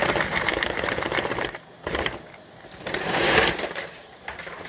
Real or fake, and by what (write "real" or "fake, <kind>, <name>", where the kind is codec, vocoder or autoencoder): fake, vocoder, BigVGAN v2